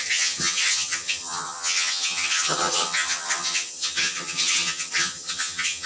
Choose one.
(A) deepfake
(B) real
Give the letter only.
A